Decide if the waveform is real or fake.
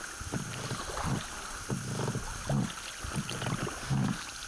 real